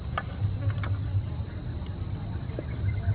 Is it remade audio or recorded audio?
recorded